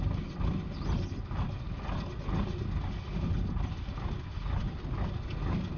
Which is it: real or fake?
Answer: real